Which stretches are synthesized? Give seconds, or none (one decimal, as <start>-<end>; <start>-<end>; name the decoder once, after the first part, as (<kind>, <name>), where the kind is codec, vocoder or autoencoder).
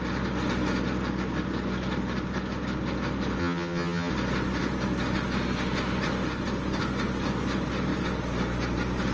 3.4-4.1 (vocoder, HiFi-GAN)